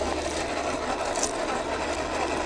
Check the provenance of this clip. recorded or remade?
recorded